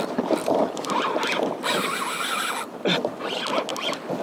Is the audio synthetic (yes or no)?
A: no